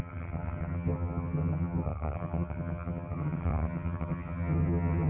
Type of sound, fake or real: fake